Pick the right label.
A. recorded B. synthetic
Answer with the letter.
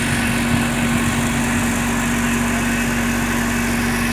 A